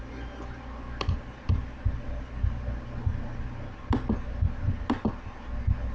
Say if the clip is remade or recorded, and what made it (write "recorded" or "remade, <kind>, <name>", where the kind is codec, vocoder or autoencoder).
recorded